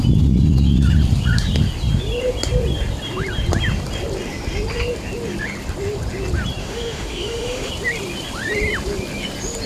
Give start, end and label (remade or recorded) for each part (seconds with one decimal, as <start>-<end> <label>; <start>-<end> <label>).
0.0-6.6 recorded; 6.6-7.7 remade; 7.7-9.7 recorded